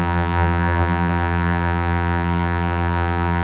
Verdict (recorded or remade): remade